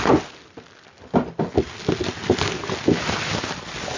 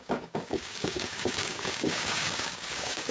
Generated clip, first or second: second